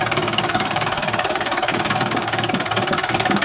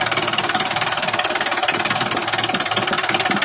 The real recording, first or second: second